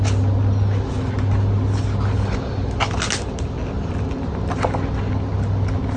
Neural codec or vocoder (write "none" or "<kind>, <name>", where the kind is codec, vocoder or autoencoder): none